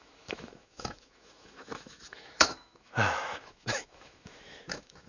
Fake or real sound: fake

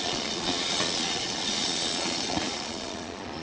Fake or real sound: fake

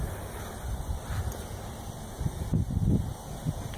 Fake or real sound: real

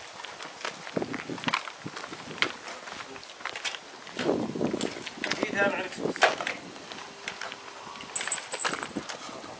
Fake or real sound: real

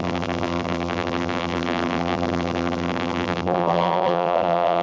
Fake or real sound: fake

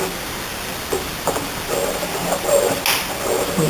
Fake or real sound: real